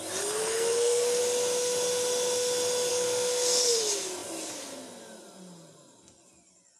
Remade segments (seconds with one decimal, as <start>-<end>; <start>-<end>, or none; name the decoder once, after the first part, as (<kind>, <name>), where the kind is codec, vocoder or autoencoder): 0.4-1.2 (codec, SNAC); 2.9-3.8